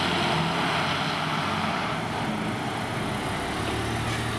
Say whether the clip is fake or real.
real